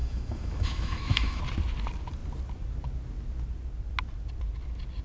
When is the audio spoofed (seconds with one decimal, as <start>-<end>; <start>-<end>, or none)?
0.0-1.4